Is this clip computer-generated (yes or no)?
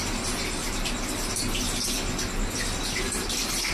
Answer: no